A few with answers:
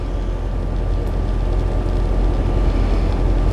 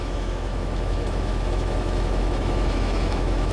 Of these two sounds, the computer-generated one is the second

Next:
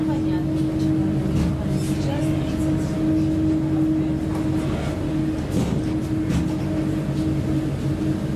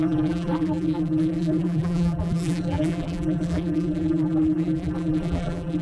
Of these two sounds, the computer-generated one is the second